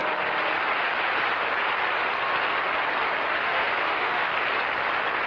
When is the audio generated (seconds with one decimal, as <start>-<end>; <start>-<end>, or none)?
3.3-4.3